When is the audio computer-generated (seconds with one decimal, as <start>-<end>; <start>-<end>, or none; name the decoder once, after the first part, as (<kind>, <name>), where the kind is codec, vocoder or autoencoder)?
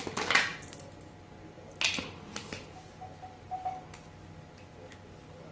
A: none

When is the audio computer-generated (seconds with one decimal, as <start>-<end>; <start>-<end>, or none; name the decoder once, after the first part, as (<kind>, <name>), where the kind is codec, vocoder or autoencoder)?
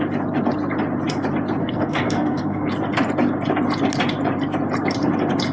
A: 1.6-2.7 (codec, SNAC)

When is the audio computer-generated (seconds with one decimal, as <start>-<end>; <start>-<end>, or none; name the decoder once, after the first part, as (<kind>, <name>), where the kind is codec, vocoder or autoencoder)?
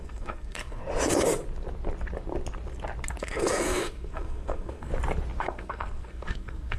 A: 0.0-0.8 (codec, SNAC); 3.2-4.9; 5.4-6.8